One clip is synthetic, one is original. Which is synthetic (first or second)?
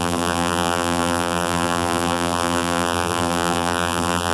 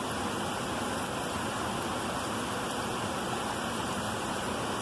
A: first